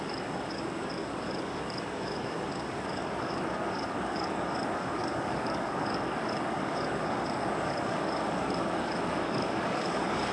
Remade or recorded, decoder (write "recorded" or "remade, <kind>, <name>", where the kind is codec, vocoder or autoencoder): remade, codec, DAC